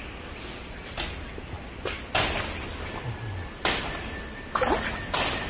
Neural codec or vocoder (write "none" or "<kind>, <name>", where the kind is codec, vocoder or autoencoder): none